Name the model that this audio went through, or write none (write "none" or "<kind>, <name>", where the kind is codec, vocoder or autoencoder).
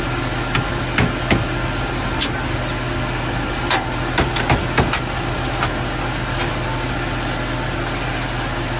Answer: none